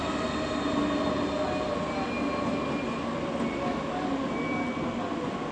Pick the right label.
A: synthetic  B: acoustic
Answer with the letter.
B